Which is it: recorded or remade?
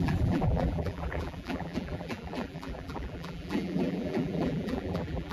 remade